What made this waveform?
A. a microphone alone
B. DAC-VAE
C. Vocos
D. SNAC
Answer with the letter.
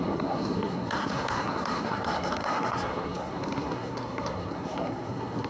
D